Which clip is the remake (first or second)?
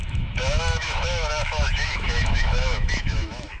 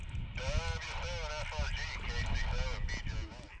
first